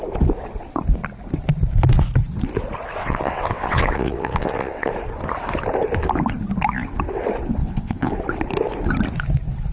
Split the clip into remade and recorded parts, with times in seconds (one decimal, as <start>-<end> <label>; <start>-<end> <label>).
0.0-3.0 recorded; 3.0-4.9 remade; 4.9-7.6 recorded; 7.6-8.1 remade; 8.1-9.7 recorded